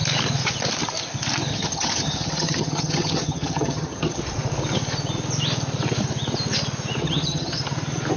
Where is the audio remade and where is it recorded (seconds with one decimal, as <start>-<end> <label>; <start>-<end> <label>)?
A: 0.0-1.5 recorded; 1.5-4.2 remade; 4.2-7.0 recorded; 7.0-7.6 remade; 7.6-8.2 recorded